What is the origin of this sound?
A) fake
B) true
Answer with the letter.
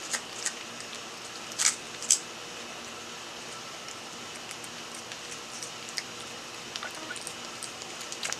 B